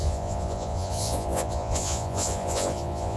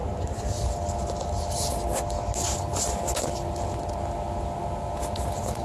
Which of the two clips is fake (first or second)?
first